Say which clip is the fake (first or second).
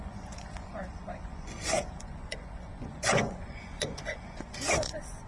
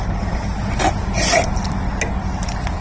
first